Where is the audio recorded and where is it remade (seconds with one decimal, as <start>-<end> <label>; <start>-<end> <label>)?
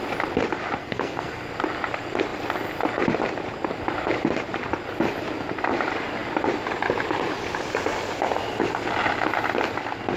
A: 0.0-0.8 recorded; 0.8-1.5 remade; 1.5-10.2 recorded